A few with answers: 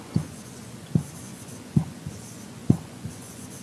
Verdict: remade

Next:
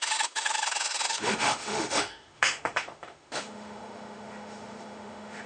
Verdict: remade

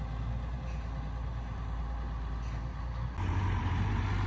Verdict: recorded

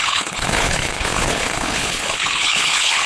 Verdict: remade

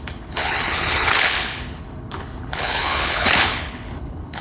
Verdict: remade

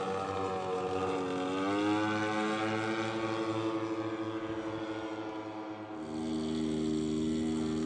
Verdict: recorded